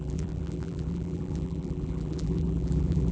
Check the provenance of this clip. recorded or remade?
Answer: remade